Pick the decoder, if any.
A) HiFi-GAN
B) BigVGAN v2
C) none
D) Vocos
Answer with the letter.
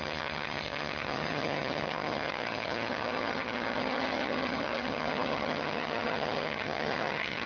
A